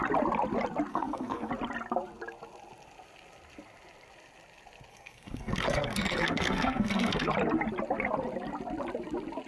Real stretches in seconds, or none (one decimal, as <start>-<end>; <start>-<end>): 0.0-0.9; 1.5-4.9; 7.3-9.5